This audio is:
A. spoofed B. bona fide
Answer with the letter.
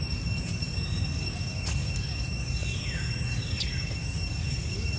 A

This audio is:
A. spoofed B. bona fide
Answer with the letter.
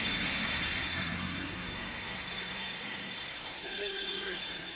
A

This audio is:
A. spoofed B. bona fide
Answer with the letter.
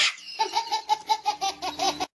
B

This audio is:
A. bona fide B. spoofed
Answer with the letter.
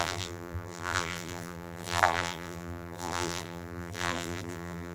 B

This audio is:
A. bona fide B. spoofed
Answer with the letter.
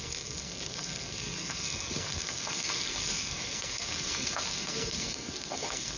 B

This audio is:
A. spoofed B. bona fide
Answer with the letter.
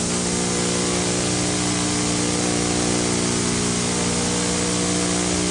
B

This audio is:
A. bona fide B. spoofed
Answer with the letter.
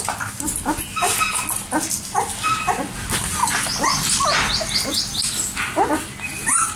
A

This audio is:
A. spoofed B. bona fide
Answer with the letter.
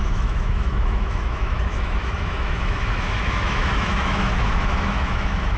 A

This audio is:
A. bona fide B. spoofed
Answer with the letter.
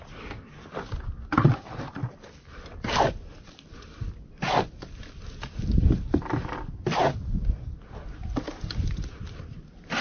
A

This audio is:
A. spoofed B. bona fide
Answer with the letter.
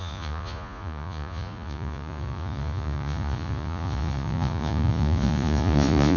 A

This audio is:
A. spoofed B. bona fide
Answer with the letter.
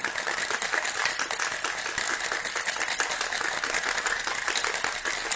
B